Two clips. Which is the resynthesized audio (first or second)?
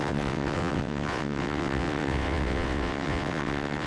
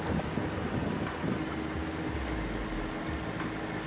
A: first